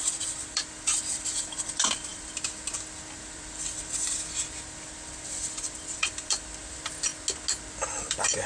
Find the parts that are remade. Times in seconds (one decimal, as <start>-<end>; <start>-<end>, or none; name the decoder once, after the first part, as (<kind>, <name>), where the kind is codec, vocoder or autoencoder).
0.0-7.1 (vocoder, BigVGAN v2); 7.9-8.5

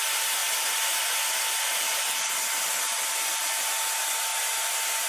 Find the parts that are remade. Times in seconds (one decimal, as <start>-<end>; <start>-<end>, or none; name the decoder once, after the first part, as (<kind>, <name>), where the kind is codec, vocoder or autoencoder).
none